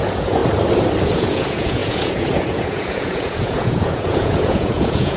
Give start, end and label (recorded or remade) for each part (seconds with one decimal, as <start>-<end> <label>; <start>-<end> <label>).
0.0-0.4 remade; 0.4-1.0 recorded; 1.0-5.2 remade